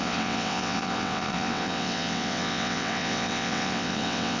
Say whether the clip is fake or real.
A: fake